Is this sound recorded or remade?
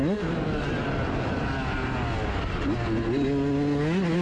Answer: recorded